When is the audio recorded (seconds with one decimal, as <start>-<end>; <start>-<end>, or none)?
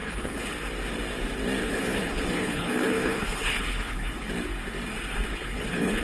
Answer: 0.5-1.6; 4.3-5.3